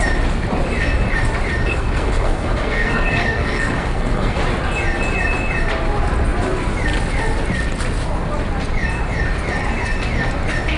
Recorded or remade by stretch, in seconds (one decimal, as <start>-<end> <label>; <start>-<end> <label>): 0.0-1.6 recorded; 1.6-4.4 remade; 4.4-10.8 recorded